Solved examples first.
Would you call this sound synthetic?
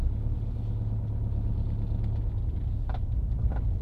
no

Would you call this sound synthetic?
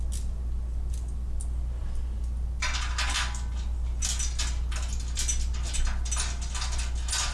no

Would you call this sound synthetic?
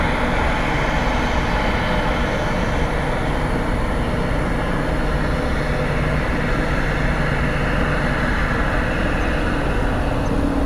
no